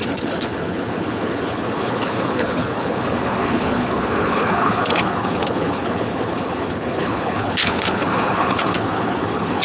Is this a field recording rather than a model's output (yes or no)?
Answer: no